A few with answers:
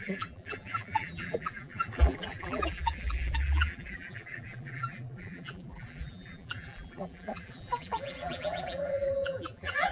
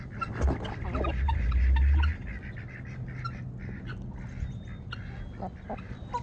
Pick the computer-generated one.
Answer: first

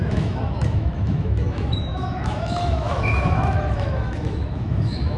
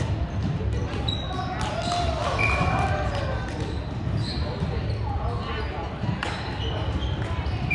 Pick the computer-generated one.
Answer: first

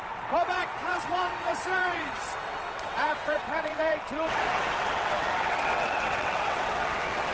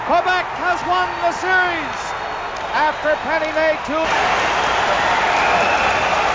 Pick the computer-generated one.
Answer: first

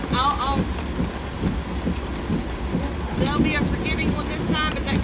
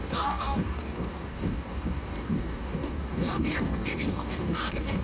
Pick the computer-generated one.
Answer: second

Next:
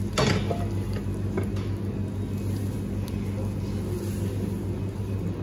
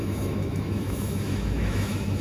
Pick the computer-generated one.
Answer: second